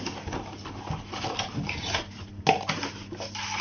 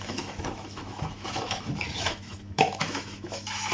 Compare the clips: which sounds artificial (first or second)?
second